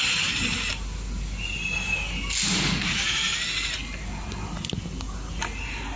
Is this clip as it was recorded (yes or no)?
yes